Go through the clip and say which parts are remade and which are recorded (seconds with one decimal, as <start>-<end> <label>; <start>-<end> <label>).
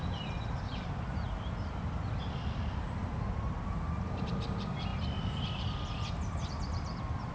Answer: 0.0-3.0 remade; 3.0-4.2 recorded; 4.2-7.3 remade